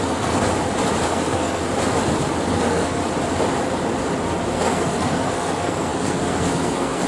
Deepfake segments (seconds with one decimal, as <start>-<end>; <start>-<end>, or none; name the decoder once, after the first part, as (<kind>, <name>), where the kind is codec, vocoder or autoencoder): 0.0-0.4 (codec, SNAC); 1.0-1.6; 2.5-3.0; 4.5-7.1